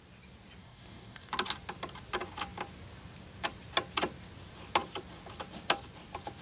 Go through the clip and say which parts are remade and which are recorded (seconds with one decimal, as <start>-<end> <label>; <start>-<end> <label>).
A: 0.0-0.6 recorded; 0.6-1.3 remade; 1.3-6.4 recorded